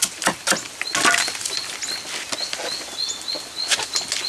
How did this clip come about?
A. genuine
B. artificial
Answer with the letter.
A